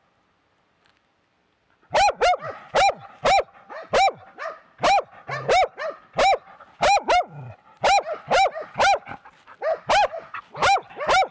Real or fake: real